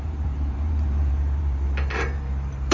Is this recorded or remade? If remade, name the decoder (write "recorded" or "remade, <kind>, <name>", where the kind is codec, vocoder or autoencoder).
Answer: remade, vocoder, BigVGAN v2